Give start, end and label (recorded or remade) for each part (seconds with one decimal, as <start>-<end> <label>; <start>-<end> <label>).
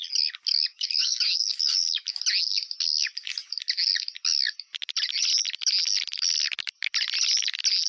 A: 0.0-0.7 recorded; 0.7-2.2 remade; 2.2-7.9 recorded